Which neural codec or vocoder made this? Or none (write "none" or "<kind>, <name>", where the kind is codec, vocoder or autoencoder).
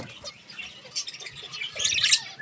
none